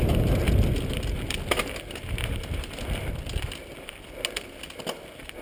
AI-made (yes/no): no